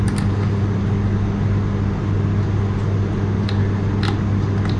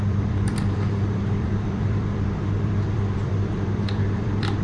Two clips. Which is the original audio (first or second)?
first